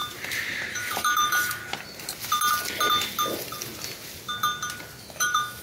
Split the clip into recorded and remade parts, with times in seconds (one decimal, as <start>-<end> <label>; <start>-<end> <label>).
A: 0.0-0.7 recorded; 0.7-1.6 remade; 1.6-5.0 recorded; 5.0-5.6 remade